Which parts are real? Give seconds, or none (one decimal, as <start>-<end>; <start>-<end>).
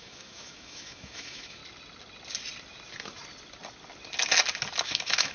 1.6-4.8